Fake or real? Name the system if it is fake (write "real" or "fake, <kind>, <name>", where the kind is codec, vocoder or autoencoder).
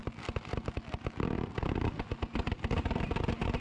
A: real